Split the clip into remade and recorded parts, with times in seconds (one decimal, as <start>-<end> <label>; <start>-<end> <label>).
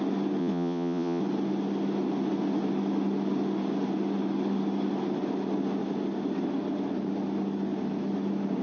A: 0.0-0.4 recorded; 0.4-1.2 remade; 1.2-8.6 recorded